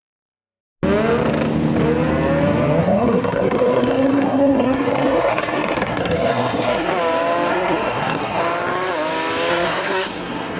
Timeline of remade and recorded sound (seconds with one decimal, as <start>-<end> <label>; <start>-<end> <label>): 0.0-0.6 remade; 0.6-2.8 recorded; 2.8-6.9 remade; 6.9-7.5 recorded; 7.5-8.4 remade; 8.4-9.5 recorded; 9.5-10.6 remade